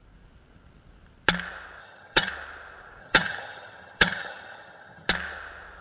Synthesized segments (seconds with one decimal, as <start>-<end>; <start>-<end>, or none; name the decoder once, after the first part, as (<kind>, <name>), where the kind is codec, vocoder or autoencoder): 1.8-2.3 (vocoder, HiFi-GAN); 3.0-5.1

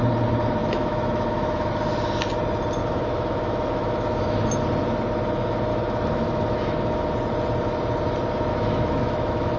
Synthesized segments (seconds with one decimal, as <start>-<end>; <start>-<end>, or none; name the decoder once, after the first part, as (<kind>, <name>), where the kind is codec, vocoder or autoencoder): 0.6-1.7 (autoencoder, DAC-VAE); 2.8-4.5; 5.7-7.0; 8.5-9.6